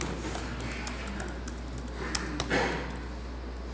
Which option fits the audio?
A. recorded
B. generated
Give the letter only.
A